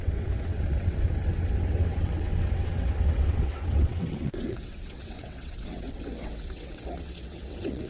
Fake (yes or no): yes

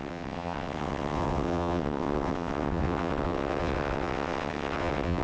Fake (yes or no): yes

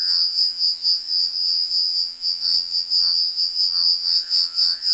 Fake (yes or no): yes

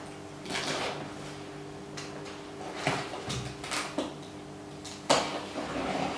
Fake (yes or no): no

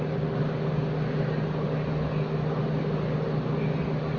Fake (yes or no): no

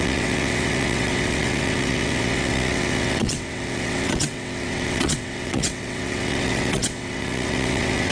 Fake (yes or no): yes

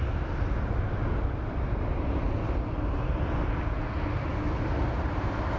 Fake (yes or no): no